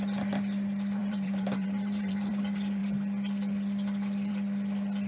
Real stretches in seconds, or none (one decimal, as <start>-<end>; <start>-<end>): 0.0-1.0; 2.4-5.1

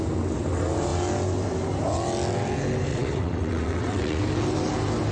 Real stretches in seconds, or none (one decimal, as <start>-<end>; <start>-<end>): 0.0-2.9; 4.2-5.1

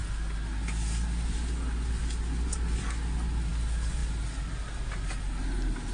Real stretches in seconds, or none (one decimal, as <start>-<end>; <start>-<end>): 0.0-5.9